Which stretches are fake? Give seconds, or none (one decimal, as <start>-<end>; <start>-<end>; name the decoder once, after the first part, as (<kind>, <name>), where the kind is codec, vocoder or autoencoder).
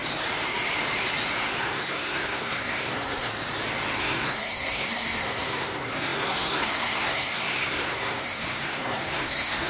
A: 1.6-3.3 (codec, SNAC); 4.0-9.7